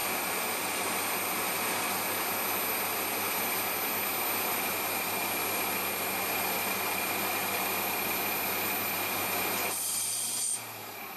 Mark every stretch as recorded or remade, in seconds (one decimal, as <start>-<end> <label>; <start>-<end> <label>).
0.0-11.2 recorded